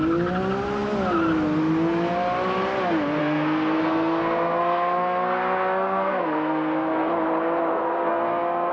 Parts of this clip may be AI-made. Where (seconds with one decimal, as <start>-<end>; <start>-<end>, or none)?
3.2-7.1; 7.7-8.7